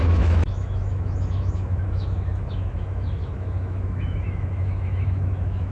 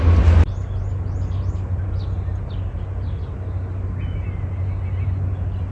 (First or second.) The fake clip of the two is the first